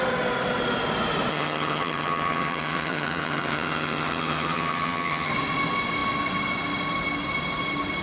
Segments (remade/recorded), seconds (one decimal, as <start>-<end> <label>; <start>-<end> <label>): 0.0-1.3 recorded; 1.3-5.3 remade; 5.3-8.0 recorded